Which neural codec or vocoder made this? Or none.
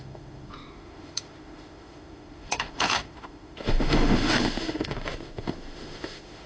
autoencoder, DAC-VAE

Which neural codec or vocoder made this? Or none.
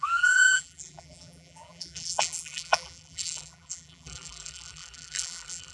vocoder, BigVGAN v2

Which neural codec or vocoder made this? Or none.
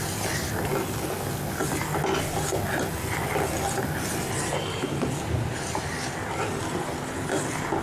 none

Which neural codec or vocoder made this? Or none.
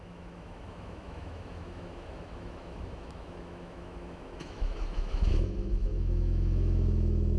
autoencoder, DAC-VAE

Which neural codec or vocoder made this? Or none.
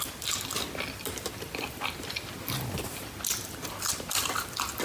vocoder, BigVGAN v2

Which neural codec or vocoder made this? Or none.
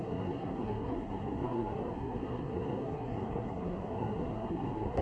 codec, SNAC